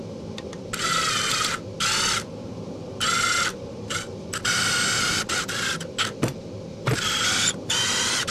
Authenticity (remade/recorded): recorded